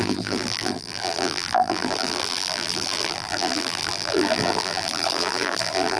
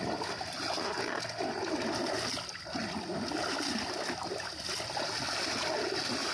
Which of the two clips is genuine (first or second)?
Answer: second